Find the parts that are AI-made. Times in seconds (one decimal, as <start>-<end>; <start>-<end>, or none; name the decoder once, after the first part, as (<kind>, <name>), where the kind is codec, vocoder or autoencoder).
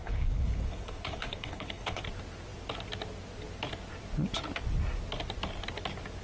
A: 0.0-2.0 (codec, HILCodec)